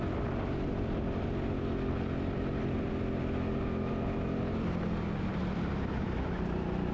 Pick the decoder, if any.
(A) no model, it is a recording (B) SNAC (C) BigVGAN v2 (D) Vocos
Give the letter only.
A